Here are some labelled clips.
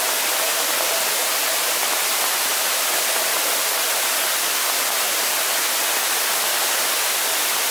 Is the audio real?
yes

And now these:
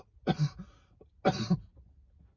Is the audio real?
yes